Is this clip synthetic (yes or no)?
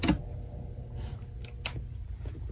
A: no